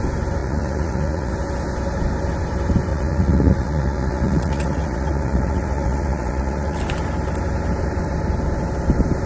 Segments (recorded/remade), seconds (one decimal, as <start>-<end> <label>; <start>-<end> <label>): 0.0-0.4 recorded; 0.4-1.3 remade; 1.3-2.9 recorded; 2.9-6.8 remade; 6.8-9.3 recorded